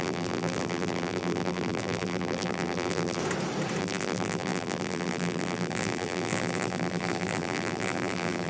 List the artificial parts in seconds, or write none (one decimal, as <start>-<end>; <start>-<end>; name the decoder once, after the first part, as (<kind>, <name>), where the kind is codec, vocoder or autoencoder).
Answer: 0.0-3.2 (vocoder, BigVGAN v2); 3.8-8.5